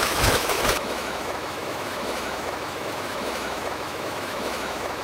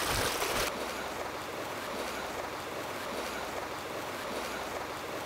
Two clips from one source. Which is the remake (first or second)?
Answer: first